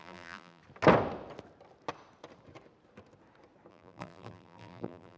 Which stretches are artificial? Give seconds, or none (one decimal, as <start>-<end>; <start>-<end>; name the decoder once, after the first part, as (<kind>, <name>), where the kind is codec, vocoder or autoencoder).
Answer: 0.0-0.6 (vocoder, BigVGAN v2); 3.7-5.2